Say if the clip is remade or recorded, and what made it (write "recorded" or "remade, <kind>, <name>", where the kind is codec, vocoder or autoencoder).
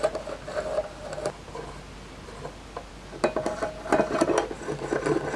recorded